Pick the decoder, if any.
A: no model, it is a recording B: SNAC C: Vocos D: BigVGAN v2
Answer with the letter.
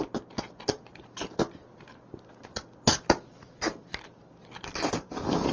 A